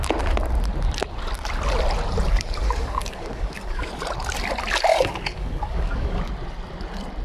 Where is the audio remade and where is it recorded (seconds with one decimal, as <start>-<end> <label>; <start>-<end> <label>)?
0.0-2.6 recorded; 2.6-3.9 remade; 3.9-4.9 recorded; 4.9-6.2 remade; 6.2-7.2 recorded